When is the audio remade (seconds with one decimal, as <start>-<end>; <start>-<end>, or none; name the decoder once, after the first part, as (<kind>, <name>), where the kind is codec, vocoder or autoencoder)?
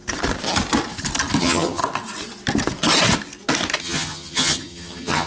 1.4-1.8 (vocoder, HiFi-GAN); 3.8-5.3